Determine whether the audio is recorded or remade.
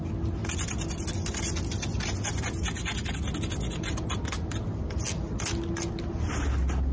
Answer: recorded